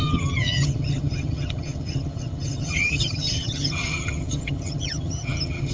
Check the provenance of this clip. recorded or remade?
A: remade